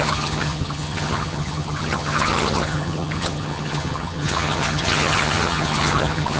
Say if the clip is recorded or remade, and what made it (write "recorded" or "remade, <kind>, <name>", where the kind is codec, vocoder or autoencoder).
remade, vocoder, HiFi-GAN